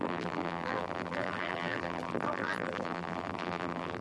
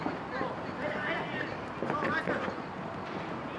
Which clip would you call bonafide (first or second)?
second